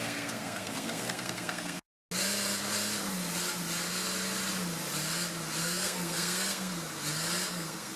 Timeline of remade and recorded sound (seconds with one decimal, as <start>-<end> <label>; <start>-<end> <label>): 0.0-2.0 remade; 2.0-5.6 recorded; 5.6-6.7 remade; 6.7-7.5 recorded; 7.5-8.0 remade